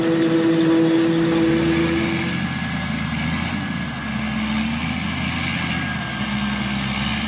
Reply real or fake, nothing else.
real